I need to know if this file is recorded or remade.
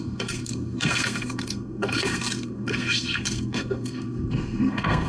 remade